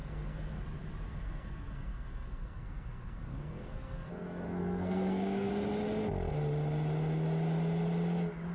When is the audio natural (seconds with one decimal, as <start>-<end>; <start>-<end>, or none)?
0.6-1.1; 5.5-8.5